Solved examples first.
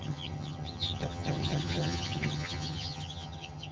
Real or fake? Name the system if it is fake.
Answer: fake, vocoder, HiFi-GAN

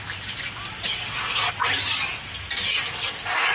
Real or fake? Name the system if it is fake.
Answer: real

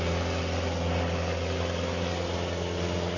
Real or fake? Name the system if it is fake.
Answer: real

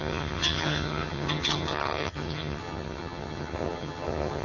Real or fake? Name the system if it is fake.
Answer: fake, vocoder, HiFi-GAN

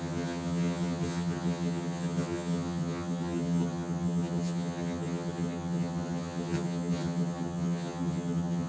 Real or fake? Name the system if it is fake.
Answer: fake, vocoder, HiFi-GAN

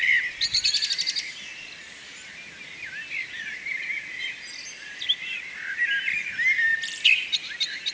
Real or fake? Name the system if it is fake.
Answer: real